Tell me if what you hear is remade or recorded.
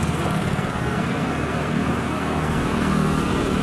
remade